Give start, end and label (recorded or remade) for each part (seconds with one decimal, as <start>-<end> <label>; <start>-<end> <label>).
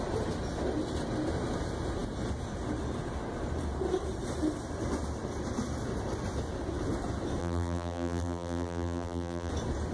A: 0.0-7.4 recorded; 7.4-9.5 remade; 9.5-9.9 recorded